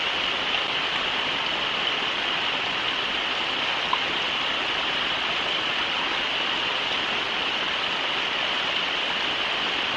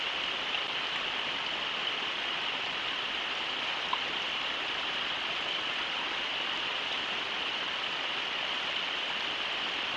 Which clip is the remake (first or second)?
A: second